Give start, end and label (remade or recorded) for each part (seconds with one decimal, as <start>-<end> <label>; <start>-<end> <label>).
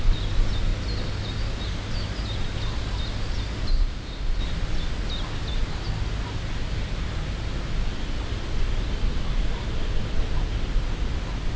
0.0-3.7 recorded; 3.7-4.4 remade; 4.4-11.6 recorded